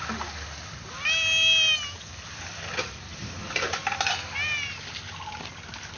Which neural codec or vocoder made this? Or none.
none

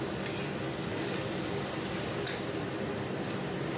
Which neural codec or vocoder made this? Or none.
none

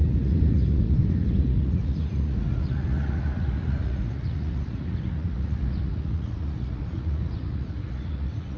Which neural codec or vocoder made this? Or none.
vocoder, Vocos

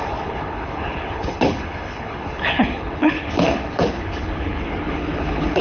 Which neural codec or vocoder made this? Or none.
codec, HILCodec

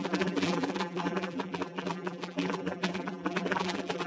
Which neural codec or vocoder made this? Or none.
vocoder, BigVGAN v2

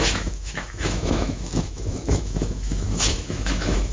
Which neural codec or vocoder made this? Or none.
autoencoder, DAC-VAE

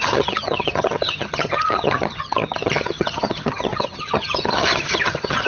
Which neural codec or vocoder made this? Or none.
vocoder, HiFi-GAN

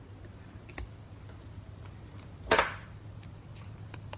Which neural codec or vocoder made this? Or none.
none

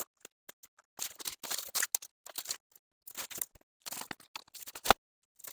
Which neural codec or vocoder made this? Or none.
none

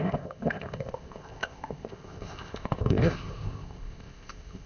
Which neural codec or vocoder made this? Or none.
codec, ZipCodec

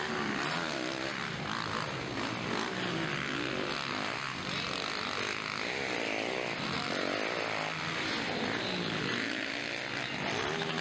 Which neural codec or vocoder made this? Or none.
none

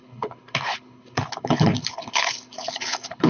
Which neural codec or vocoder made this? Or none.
codec, HILCodec